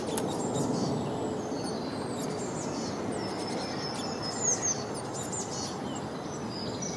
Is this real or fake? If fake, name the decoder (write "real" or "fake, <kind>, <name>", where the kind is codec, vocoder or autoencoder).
real